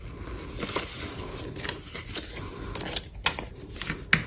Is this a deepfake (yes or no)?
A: no